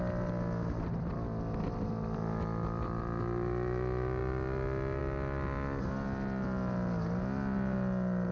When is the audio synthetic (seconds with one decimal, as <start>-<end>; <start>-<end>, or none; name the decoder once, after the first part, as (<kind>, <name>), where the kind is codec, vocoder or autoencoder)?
none